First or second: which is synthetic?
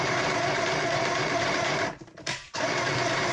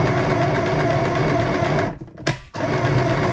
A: first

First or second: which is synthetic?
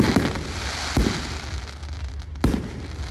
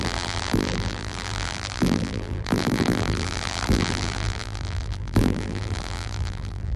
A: second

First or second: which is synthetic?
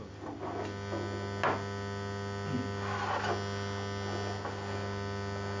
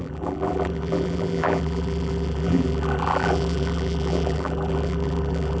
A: second